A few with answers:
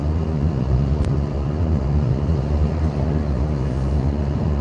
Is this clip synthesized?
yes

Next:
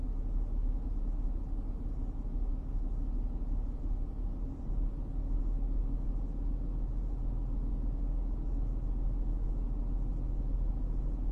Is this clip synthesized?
no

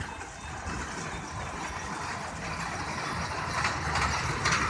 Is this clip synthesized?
no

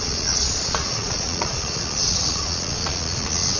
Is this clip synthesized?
yes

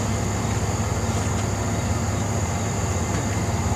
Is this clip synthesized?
no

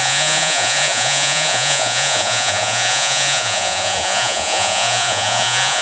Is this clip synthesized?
yes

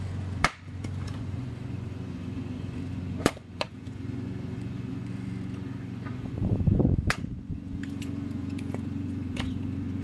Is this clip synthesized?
yes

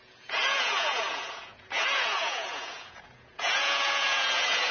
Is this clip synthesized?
yes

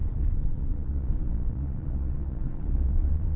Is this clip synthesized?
yes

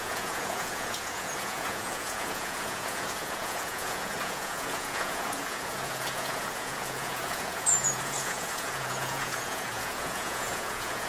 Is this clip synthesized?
yes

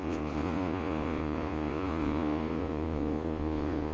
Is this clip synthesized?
yes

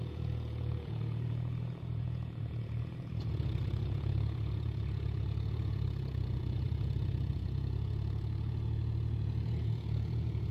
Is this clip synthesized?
yes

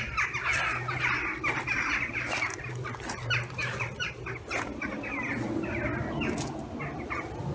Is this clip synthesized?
no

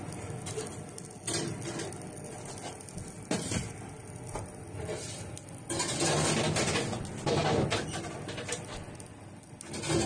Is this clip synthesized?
no